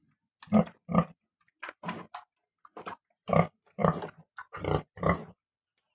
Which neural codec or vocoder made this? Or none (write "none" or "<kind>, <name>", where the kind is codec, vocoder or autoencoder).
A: none